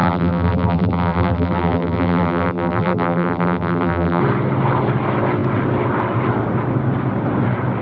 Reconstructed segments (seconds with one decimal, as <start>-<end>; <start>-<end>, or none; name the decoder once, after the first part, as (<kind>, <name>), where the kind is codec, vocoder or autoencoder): 0.0-4.2 (vocoder, BigVGAN v2)